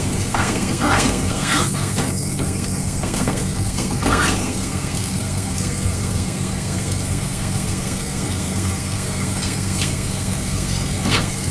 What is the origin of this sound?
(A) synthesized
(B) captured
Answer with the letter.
A